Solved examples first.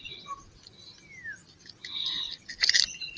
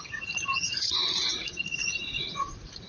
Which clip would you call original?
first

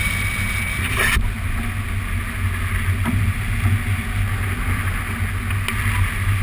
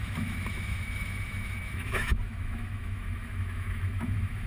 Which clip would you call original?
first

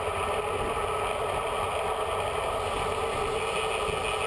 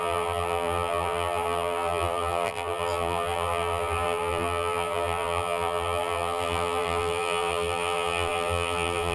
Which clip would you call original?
first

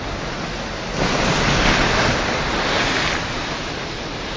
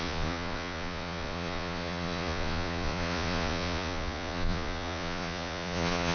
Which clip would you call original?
first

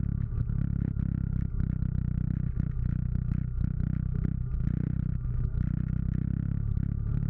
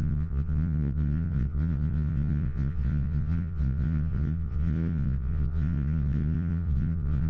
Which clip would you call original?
first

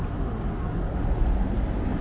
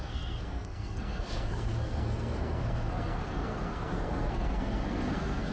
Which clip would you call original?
first